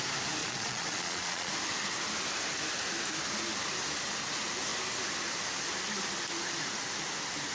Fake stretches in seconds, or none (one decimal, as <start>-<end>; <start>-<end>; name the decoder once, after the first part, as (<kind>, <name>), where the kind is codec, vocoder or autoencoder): 0.4-1.5 (vocoder, Vocos)